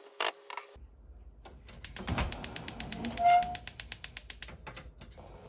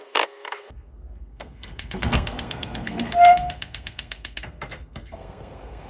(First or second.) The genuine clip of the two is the first